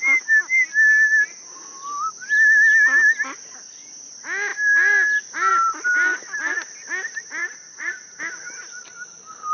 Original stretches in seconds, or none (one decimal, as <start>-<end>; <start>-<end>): 0.0-7.4; 8.2-9.5